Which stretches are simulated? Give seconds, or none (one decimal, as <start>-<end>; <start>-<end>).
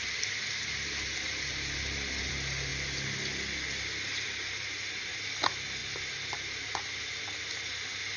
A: 1.5-2.3